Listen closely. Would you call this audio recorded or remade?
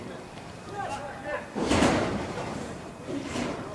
remade